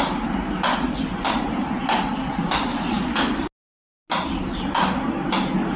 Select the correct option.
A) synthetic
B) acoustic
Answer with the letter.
B